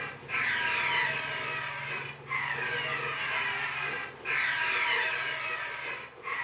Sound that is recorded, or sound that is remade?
recorded